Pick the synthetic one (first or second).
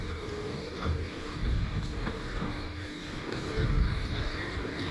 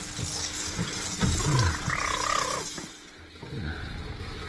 first